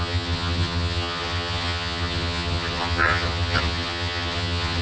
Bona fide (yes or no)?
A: no